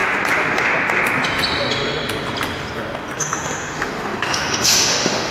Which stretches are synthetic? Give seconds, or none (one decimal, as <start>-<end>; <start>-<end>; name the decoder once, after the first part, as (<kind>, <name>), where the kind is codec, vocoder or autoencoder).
3.2-5.3 (autoencoder, DAC-VAE)